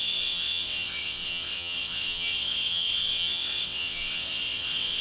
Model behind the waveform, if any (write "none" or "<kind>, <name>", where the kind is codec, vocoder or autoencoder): vocoder, WaveNeXt